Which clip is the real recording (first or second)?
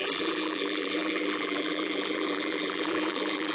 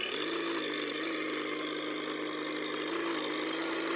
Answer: second